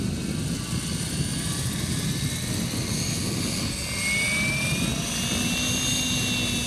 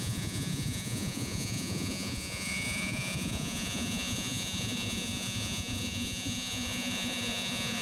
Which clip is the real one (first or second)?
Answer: first